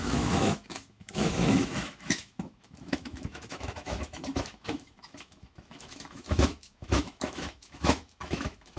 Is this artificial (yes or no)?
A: yes